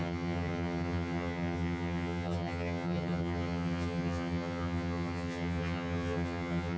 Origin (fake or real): fake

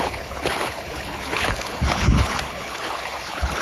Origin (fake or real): fake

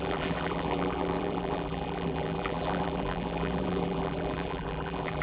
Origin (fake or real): fake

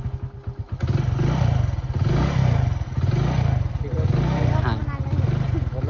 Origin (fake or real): real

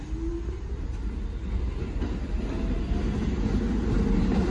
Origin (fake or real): real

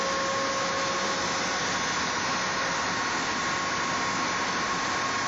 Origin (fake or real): real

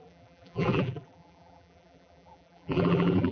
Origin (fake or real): fake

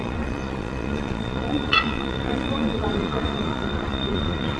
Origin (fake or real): fake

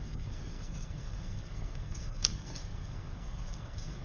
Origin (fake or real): fake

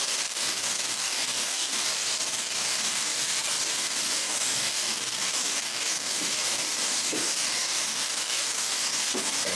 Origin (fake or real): fake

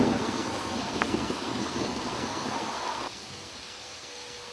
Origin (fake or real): fake